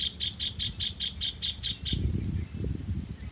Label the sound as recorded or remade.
recorded